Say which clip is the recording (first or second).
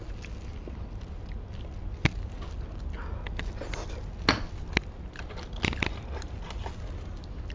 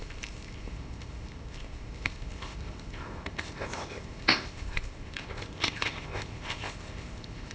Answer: first